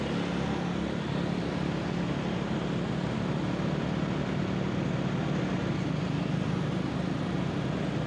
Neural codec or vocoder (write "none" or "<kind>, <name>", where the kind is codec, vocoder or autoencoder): none